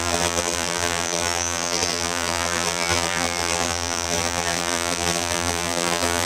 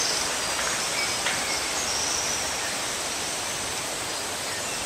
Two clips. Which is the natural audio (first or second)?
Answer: second